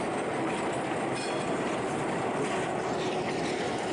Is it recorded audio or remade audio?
recorded